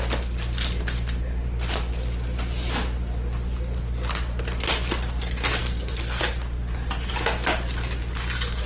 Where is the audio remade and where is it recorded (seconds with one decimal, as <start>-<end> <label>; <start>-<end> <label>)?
0.0-5.6 recorded; 5.6-6.2 remade; 6.2-8.7 recorded